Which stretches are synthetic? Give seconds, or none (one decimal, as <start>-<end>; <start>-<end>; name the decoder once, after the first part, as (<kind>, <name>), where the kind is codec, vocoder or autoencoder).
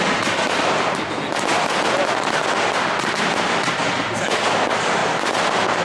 none